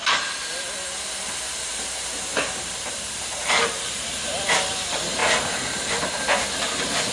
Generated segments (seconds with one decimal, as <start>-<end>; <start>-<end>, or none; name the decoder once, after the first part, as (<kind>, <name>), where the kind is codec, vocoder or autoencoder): 1.7-4.1 (vocoder, BigVGAN v2)